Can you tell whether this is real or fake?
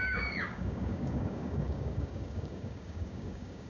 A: fake